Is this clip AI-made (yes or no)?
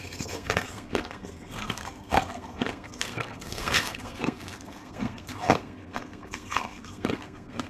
yes